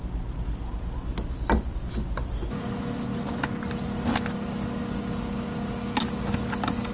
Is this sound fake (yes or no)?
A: no